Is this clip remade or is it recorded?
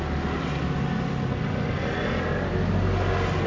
recorded